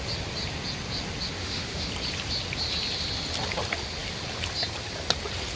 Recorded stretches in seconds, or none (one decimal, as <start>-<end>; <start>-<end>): 0.0-1.4; 1.9-5.6